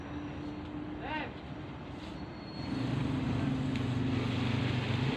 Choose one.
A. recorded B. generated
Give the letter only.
A